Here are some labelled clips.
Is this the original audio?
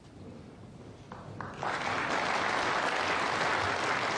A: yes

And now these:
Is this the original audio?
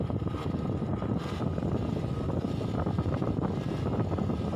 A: yes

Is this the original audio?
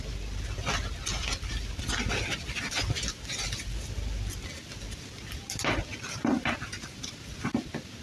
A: yes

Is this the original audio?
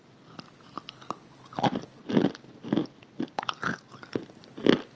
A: yes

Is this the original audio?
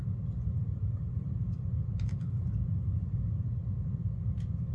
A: yes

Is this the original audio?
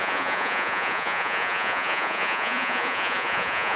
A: no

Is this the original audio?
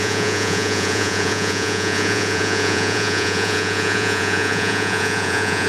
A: no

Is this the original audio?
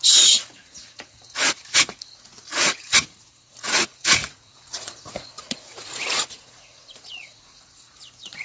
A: no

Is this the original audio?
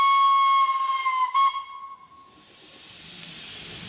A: yes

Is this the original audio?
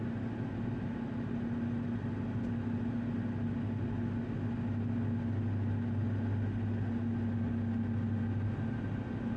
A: yes